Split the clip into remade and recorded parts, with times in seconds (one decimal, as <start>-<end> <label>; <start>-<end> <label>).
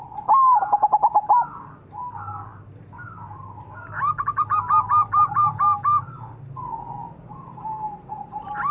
0.0-8.7 recorded